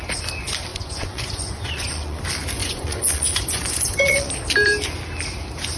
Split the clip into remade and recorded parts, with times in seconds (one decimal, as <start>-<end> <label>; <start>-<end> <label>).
0.0-0.7 recorded; 0.7-2.2 remade; 2.2-2.6 recorded; 2.6-4.3 remade; 4.3-5.8 recorded